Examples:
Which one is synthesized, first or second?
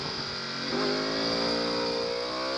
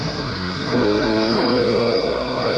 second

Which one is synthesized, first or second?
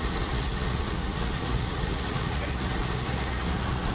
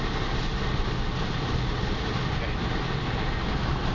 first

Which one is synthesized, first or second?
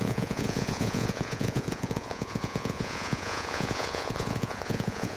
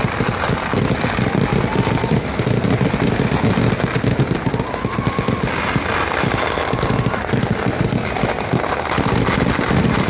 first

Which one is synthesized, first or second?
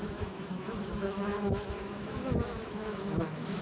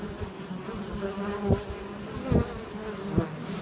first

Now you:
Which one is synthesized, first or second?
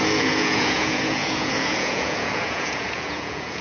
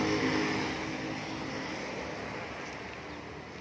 first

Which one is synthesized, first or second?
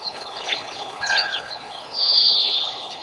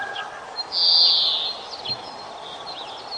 first